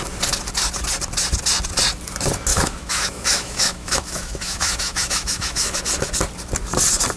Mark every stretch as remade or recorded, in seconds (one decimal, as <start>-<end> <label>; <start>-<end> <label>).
0.0-2.5 recorded; 2.5-5.8 remade; 5.8-7.2 recorded